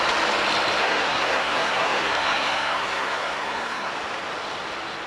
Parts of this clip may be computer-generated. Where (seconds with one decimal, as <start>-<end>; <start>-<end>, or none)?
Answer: 0.8-3.9

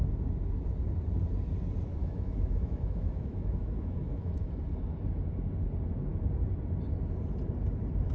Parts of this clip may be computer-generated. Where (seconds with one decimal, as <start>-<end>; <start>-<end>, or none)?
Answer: 2.0-4.5

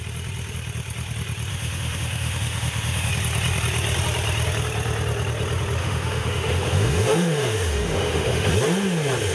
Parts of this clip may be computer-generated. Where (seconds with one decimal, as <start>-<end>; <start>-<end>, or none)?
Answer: 1.5-3.1; 5.8-8.5

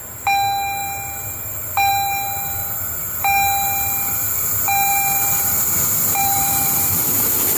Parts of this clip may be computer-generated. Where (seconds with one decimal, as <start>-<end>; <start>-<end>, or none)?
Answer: 4.9-5.6; 6.2-7.6

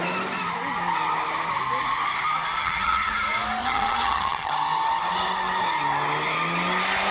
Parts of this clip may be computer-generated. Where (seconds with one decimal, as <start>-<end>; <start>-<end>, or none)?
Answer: 2.6-3.1; 3.6-4.5

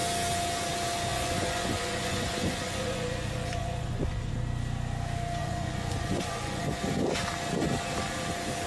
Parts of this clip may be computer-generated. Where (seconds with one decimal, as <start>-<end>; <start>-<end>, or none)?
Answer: 1.1-4.3; 5.4-6.8

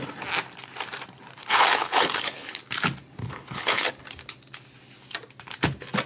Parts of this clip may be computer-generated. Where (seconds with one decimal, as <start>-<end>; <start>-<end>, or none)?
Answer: 1.4-2.6; 3.2-3.9